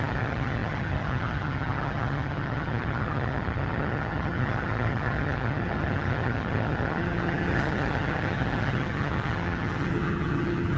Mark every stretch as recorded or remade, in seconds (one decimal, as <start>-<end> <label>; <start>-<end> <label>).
0.0-10.8 remade